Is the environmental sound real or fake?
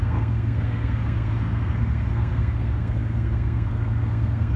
fake